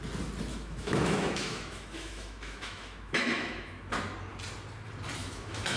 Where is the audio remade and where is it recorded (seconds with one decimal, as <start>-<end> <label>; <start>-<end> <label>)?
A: 0.0-0.5 recorded; 0.5-3.9 remade; 3.9-5.2 recorded; 5.2-5.8 remade